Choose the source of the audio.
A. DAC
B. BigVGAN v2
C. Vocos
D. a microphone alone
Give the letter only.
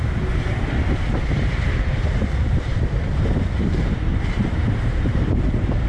B